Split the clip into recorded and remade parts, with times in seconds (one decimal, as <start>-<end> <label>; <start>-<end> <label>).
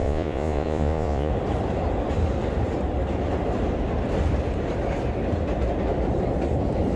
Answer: 0.0-1.3 remade; 1.3-7.0 recorded